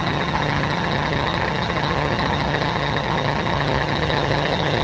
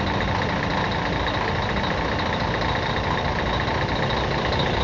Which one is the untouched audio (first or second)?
second